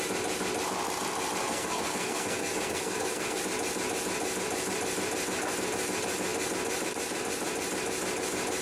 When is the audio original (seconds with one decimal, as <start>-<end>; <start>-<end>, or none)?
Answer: 0.0-1.4; 3.4-8.6